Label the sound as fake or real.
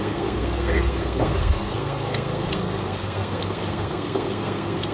fake